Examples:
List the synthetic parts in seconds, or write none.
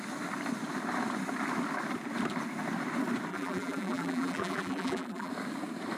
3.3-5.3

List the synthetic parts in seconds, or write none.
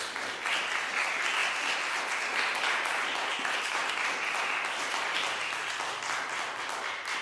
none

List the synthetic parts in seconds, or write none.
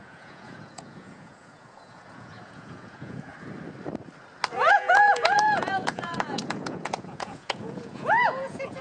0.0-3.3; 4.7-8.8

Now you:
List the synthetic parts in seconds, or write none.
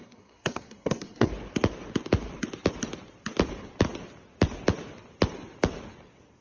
0.0-1.3